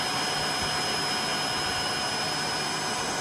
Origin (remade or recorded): recorded